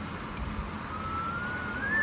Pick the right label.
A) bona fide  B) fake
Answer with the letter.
A